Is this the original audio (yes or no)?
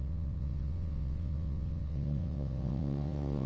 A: no